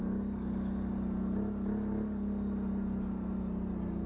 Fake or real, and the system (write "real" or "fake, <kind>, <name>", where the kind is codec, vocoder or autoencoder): real